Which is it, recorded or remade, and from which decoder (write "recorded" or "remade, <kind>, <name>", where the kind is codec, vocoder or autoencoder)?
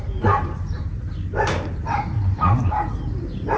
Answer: remade, vocoder, BigVGAN v2